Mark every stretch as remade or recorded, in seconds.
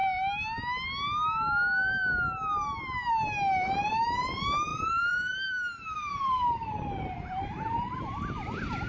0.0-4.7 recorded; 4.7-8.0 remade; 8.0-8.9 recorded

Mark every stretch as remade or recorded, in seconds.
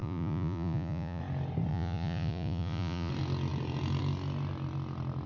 0.0-1.2 remade; 1.2-1.7 recorded; 1.7-3.1 remade; 3.1-5.3 recorded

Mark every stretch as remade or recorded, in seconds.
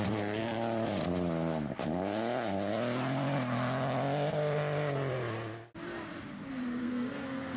0.0-6.8 recorded; 6.8-7.6 remade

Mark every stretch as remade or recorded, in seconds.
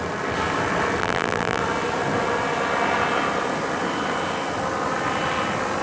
0.0-1.0 recorded; 1.0-1.6 remade; 1.6-5.8 recorded